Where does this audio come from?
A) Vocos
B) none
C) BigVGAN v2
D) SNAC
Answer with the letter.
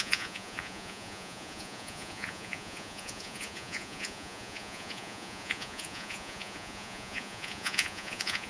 A